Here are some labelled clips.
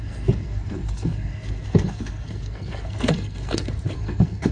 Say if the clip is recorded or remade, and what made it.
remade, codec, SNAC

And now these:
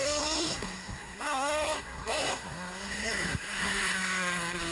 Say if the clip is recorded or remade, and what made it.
remade, codec, SNAC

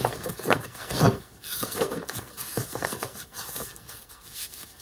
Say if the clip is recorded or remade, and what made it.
remade, codec, SNAC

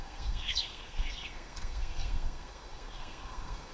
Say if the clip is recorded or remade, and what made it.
remade, codec, SNAC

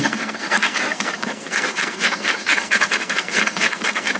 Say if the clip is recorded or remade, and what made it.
remade, codec, SNAC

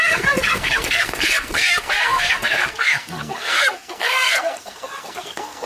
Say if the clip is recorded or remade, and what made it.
remade, codec, SNAC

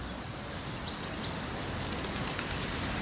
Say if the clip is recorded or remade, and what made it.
recorded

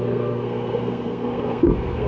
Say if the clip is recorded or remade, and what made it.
remade, codec, SNAC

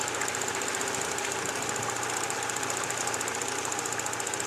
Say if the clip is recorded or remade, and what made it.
recorded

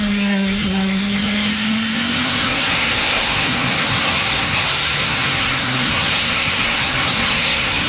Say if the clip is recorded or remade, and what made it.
remade, codec, SNAC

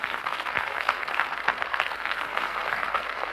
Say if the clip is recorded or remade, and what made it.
remade, codec, SNAC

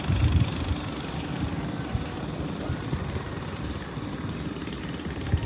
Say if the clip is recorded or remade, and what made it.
recorded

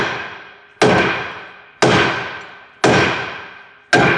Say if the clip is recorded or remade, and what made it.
recorded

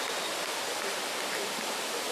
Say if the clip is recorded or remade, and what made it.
recorded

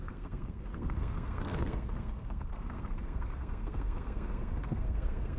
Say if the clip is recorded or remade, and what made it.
remade, codec, SNAC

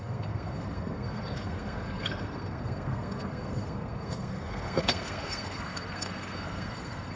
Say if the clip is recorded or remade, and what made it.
remade, codec, SNAC